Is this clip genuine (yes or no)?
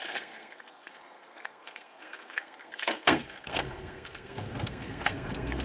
no